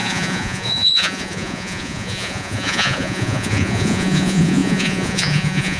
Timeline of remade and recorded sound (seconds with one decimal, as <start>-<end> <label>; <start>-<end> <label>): 0.0-5.8 remade